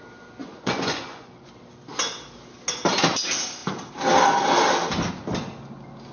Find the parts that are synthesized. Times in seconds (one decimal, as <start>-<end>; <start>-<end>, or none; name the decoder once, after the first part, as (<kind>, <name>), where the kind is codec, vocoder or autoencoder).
0.4-1.5 (vocoder, Vocos)

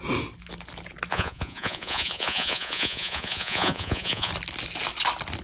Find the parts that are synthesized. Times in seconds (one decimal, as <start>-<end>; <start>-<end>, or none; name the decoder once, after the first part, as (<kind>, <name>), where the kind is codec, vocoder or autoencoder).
1.1-4.3 (vocoder, Vocos)

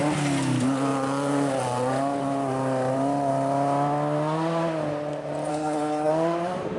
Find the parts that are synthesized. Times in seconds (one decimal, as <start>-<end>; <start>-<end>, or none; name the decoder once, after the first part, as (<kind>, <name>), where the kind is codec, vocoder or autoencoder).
5.5-6.1 (codec, SNAC)

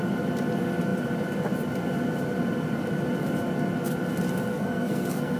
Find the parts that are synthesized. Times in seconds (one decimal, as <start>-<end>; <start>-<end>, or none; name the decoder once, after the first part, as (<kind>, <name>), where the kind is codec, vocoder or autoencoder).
4.5-5.4 (codec, SNAC)

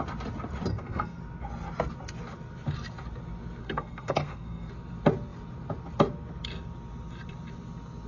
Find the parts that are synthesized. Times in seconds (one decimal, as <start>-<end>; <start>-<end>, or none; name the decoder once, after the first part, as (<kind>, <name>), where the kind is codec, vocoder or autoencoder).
0.7-1.2 (codec, SNAC); 3.6-4.7